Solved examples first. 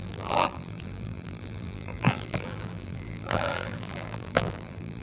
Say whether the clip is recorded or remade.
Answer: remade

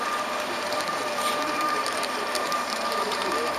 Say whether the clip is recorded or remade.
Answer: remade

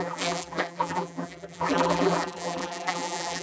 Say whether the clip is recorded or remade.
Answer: remade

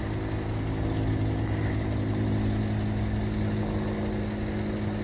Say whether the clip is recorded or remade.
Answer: recorded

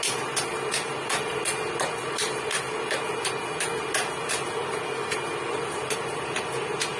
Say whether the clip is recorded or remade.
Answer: recorded